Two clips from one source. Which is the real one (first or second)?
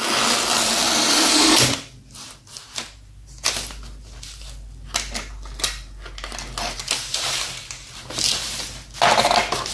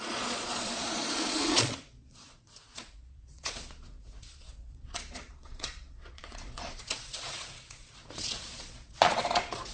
first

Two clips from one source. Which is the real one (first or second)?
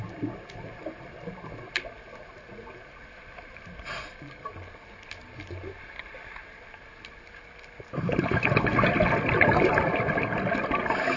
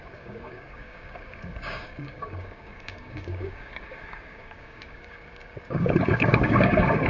first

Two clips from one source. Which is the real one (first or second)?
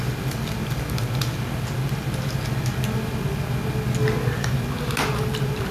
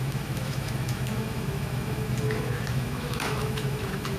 first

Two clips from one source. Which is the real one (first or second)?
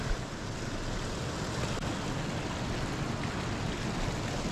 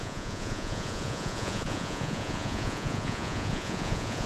first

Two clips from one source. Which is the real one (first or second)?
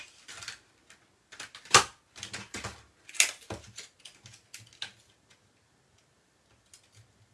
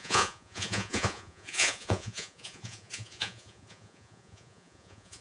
first